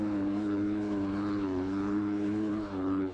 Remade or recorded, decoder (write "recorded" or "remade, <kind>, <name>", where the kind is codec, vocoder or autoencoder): remade, codec, HILCodec